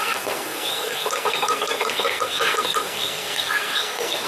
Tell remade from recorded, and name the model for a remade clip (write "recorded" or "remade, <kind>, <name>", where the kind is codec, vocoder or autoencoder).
remade, codec, SNAC